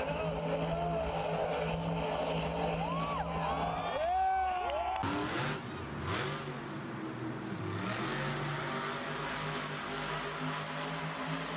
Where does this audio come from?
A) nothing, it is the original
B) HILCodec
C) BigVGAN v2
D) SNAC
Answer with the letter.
A